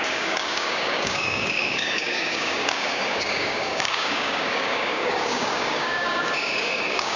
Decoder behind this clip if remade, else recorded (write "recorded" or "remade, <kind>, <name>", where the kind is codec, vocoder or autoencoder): remade, codec, DAC